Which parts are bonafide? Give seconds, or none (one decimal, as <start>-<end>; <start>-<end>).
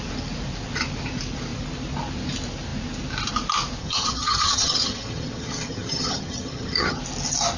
0.0-3.8; 7.0-7.6